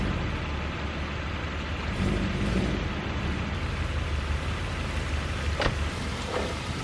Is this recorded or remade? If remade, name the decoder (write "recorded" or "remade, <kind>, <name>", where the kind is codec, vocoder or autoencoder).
recorded